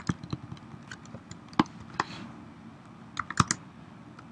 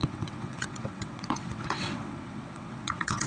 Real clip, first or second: first